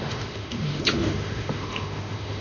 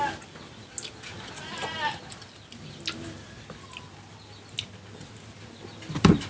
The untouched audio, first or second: second